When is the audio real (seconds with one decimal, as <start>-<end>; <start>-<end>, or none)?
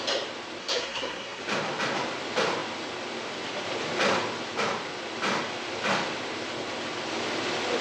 0.0-0.6; 1.4-7.8